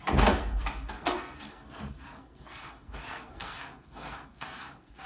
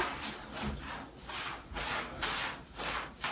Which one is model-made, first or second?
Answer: first